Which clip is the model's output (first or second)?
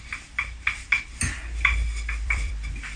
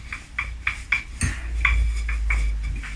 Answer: first